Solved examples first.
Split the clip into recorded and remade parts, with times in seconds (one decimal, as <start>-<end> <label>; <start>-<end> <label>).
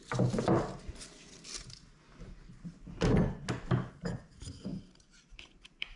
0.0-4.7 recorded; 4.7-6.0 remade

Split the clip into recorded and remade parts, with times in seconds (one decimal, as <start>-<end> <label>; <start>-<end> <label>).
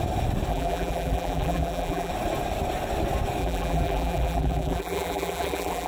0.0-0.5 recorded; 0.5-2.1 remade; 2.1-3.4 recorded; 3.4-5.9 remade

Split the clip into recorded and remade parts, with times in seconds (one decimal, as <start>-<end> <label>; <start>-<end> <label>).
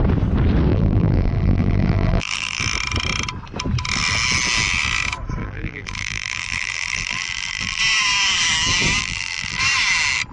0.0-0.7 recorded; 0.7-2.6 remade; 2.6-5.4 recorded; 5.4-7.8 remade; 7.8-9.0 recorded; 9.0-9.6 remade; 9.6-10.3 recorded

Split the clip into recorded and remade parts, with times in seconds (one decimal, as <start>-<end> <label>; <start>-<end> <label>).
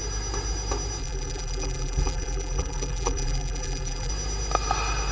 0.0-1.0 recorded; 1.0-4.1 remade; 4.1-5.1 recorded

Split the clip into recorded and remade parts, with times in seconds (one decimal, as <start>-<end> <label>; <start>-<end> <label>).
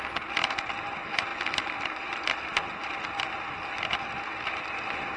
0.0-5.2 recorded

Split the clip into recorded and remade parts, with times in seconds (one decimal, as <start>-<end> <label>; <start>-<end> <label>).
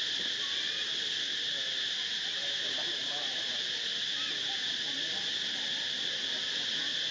0.0-2.4 recorded; 2.4-3.6 remade; 3.6-7.1 recorded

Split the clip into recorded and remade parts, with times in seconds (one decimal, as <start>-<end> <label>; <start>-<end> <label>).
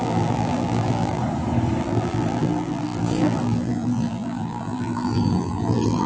0.0-1.2 remade; 1.2-1.8 recorded; 1.8-6.1 remade